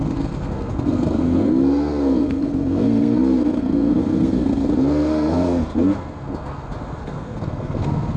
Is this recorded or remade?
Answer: remade